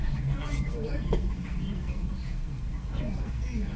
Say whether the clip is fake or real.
fake